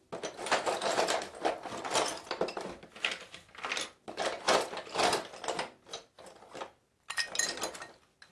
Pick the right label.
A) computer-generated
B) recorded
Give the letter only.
B